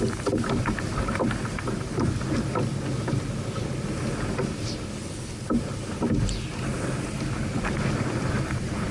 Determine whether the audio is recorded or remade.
recorded